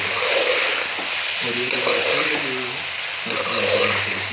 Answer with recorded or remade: recorded